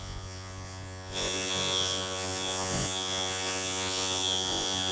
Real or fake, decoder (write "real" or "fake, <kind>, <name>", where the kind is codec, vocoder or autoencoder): fake, vocoder, Vocos